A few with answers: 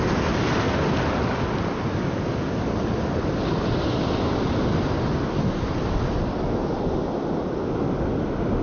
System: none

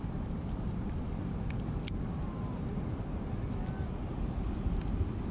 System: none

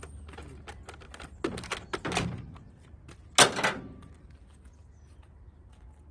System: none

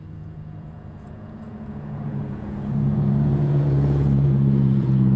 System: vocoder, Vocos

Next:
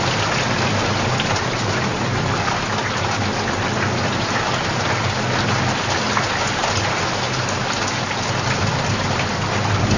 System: none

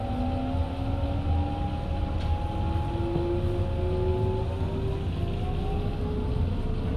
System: none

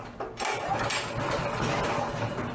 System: none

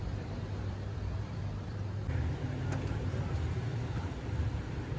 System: vocoder, BigVGAN v2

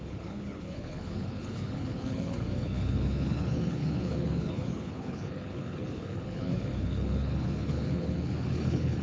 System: codec, HILCodec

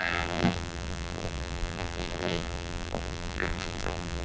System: vocoder, BigVGAN v2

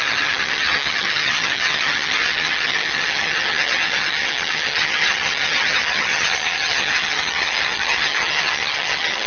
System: vocoder, HiFi-GAN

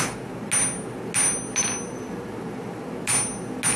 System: none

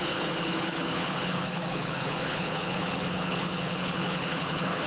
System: codec, HILCodec